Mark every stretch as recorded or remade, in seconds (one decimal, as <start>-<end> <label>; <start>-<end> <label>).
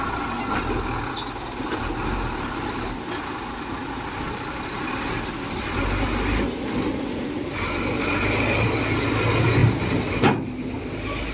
0.0-11.3 recorded